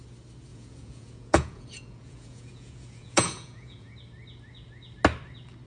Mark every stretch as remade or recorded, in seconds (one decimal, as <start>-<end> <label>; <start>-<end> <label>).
0.0-0.5 recorded; 0.5-3.9 remade; 3.9-5.7 recorded